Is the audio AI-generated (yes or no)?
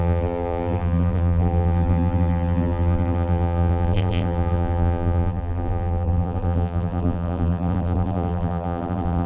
yes